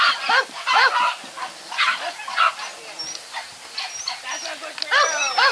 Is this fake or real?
real